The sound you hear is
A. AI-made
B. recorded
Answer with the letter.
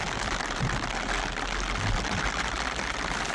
B